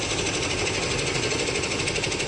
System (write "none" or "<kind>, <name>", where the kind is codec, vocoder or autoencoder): none